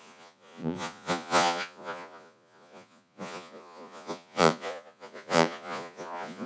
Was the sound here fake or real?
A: fake